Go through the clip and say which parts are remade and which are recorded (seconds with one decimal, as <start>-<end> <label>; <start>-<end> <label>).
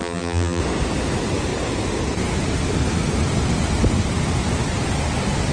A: 0.0-0.6 remade; 0.6-5.5 recorded